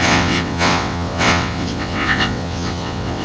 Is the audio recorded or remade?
remade